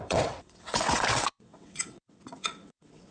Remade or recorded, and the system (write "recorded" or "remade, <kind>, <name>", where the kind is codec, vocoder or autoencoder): remade, vocoder, WaveNeXt